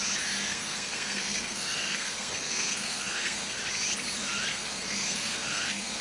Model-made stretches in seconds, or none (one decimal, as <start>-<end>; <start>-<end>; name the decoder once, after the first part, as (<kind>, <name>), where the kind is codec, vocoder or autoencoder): 0.5-3.6 (codec, SNAC); 4.5-6.0